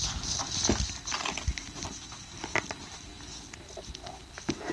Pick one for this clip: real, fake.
real